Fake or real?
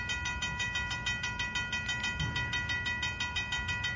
real